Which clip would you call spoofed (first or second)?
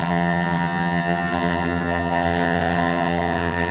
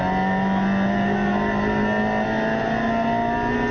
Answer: first